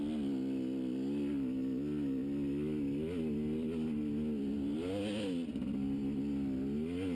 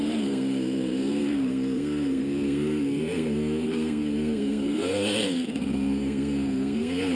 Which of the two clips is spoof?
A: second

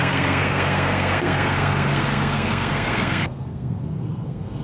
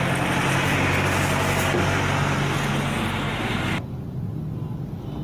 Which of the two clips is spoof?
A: first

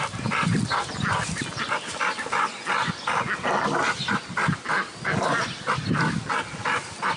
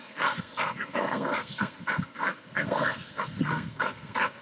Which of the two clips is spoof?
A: second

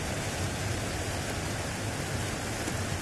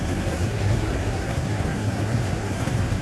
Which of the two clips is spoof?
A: second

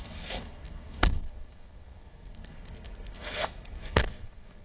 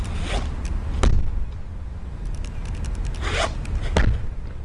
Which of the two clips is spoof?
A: first